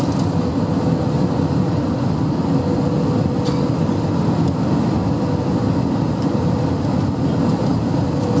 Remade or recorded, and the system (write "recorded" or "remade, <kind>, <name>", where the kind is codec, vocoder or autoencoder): recorded